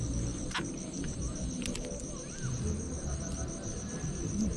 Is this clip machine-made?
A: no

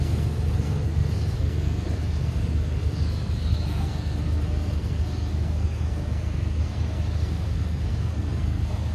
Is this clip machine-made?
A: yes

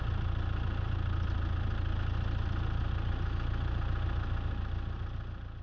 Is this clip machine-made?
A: no